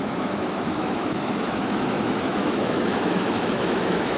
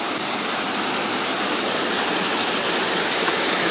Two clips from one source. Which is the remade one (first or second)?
first